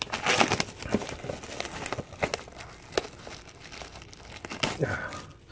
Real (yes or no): yes